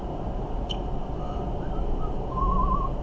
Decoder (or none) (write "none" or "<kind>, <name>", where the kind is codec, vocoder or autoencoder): none